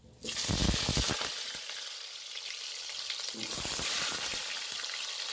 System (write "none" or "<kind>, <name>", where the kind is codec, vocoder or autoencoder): none